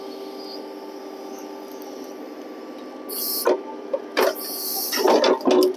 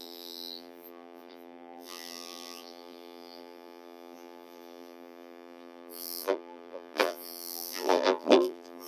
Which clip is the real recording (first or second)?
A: first